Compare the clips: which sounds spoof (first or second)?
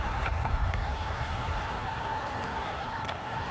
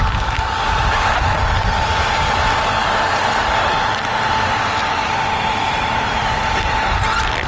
first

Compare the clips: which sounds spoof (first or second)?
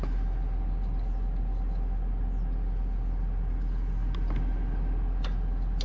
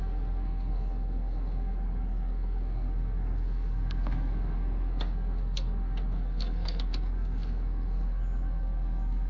second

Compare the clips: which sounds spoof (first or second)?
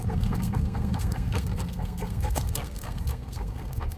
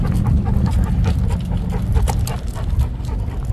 first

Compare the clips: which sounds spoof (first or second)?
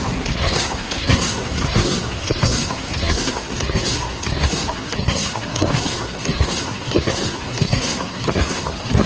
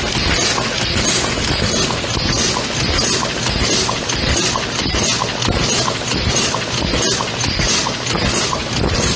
first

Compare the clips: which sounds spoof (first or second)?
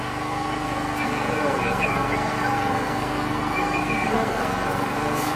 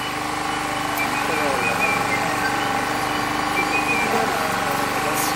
first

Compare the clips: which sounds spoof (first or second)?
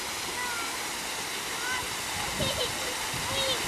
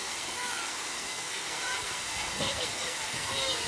second